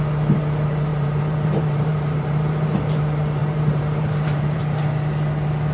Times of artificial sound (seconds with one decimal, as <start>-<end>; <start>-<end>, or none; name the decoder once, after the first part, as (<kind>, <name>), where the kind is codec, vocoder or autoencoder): 0.9-3.0 (vocoder, BigVGAN v2); 3.4-4.6